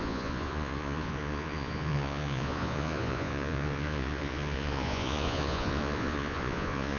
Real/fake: fake